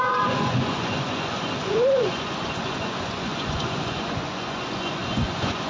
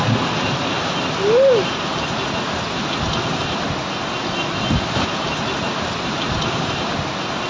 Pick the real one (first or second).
second